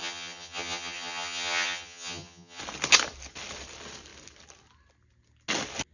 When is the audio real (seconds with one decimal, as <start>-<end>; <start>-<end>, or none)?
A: 2.6-5.9